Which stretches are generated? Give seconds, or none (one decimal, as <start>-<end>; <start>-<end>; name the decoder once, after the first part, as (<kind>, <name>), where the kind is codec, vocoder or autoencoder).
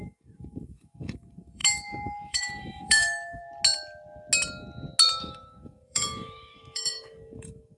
0.0-3.4 (codec, DAC); 5.2-7.8